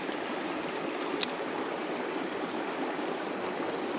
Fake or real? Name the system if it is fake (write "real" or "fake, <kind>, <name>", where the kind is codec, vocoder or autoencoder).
real